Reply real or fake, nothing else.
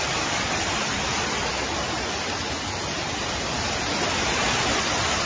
real